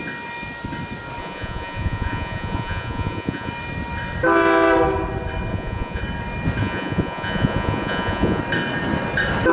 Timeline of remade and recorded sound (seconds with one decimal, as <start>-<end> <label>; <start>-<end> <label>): 0.0-1.2 recorded; 1.2-3.5 remade; 3.5-5.5 recorded; 5.5-6.0 remade; 6.0-6.6 recorded; 6.6-8.4 remade; 8.4-9.5 recorded